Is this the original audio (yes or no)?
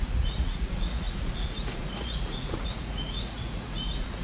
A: no